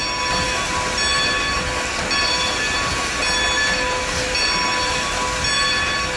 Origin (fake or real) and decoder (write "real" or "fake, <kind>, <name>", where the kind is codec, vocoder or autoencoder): real